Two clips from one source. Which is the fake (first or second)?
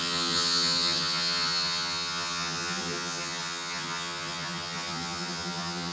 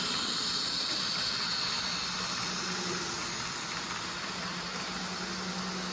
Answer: first